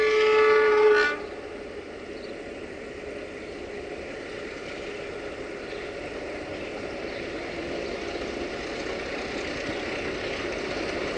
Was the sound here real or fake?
real